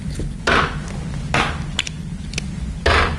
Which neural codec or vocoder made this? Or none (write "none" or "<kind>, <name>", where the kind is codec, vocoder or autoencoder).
none